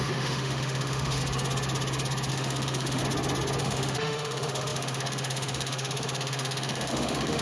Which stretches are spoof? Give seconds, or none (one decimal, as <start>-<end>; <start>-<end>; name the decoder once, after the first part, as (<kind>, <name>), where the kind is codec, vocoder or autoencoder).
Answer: 0.0-1.2 (autoencoder, DAC-VAE); 2.3-3.0; 3.6-7.4